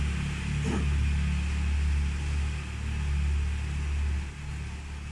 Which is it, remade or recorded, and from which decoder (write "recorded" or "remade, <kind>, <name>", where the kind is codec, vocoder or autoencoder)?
recorded